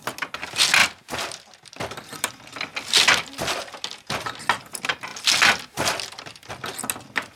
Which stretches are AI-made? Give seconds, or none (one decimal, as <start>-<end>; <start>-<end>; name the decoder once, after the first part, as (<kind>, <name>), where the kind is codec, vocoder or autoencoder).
none